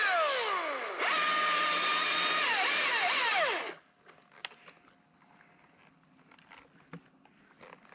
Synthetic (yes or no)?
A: no